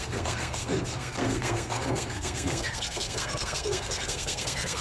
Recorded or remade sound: remade